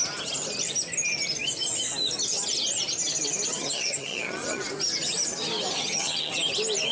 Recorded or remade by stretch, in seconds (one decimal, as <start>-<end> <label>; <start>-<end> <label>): 0.0-3.5 recorded; 3.5-4.6 remade; 4.6-5.8 recorded; 5.8-6.3 remade; 6.3-6.9 recorded